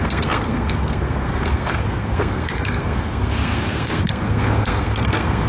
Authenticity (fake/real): fake